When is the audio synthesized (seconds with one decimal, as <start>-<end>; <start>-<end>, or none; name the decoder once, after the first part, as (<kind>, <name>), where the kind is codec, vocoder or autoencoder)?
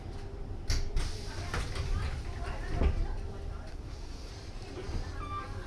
3.7-4.3 (codec, SNAC)